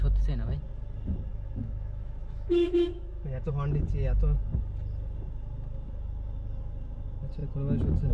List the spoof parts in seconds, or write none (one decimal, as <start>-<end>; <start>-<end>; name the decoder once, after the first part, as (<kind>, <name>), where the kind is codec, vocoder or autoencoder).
1.3-3.5 (autoencoder, DAC-VAE)